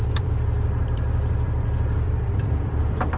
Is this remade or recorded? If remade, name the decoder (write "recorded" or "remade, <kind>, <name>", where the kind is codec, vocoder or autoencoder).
remade, vocoder, BigVGAN v2